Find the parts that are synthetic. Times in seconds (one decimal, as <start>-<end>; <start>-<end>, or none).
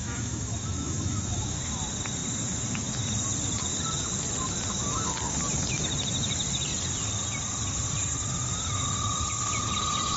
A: 0.0-1.6